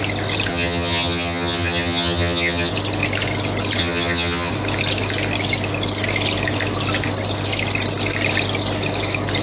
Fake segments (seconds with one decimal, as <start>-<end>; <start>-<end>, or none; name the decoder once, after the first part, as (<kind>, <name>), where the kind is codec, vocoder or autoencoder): 0.5-2.7 (vocoder, HiFi-GAN); 3.8-4.5